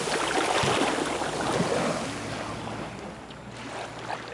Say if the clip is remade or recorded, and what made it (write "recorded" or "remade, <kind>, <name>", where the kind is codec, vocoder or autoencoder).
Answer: recorded